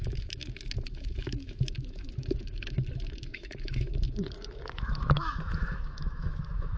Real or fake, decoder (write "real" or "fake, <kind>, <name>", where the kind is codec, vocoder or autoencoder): fake, autoencoder, DAC-VAE